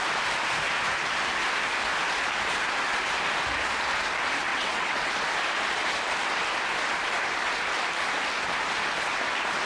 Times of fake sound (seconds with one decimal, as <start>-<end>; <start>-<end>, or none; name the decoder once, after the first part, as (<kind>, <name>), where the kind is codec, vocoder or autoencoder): 4.5-5.1 (vocoder, WaveNeXt)